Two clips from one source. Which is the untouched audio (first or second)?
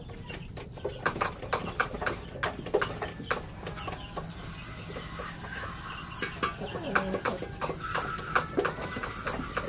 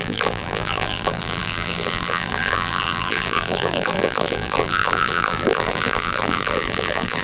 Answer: first